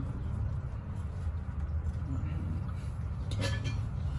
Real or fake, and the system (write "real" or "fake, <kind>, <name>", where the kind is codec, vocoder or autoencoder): real